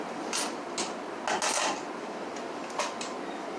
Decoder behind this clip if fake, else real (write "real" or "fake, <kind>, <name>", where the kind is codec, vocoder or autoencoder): real